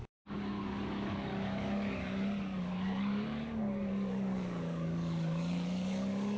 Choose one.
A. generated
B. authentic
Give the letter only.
A